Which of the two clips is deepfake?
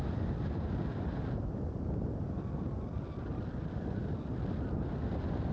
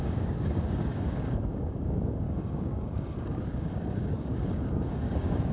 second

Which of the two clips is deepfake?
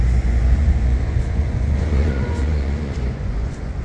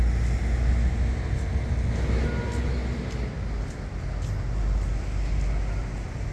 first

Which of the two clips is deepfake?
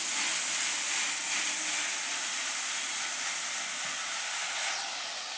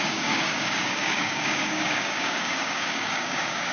second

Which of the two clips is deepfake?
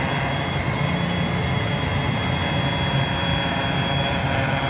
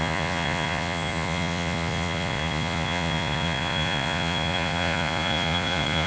second